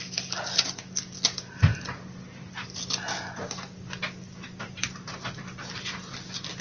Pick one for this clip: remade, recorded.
recorded